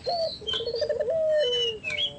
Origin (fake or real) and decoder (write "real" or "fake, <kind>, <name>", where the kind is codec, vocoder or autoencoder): real